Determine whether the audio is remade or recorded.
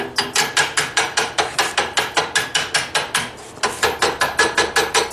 recorded